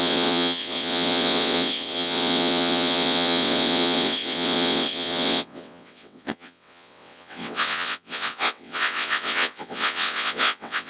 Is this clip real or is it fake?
fake